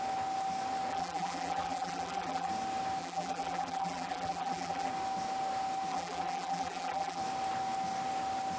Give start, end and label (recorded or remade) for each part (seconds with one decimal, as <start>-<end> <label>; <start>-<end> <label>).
0.0-0.9 recorded; 0.9-2.5 remade; 2.5-3.0 recorded; 3.0-4.9 remade; 4.9-5.9 recorded; 5.9-7.2 remade; 7.2-8.6 recorded